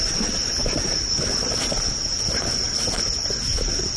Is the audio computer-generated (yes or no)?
no